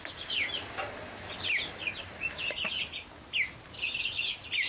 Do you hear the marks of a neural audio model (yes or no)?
no